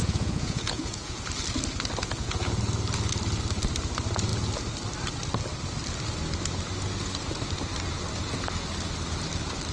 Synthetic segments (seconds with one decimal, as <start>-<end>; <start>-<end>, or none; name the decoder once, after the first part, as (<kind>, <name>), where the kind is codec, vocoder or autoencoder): 0.0-1.2 (vocoder, Vocos); 2.0-2.6